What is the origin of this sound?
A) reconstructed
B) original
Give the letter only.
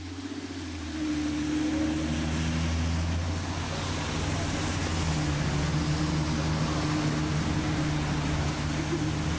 B